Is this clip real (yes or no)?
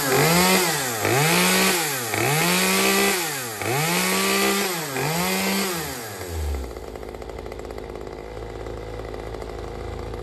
yes